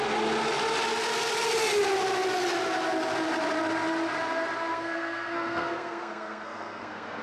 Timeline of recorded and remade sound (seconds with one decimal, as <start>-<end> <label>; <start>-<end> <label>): 0.0-4.7 recorded; 4.7-7.2 remade